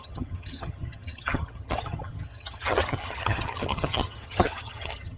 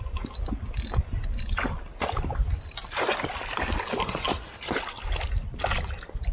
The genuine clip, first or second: second